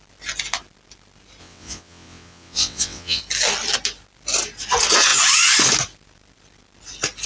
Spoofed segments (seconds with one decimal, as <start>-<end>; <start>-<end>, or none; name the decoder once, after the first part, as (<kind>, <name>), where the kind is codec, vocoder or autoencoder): 1.4-3.2 (vocoder, WaveNeXt)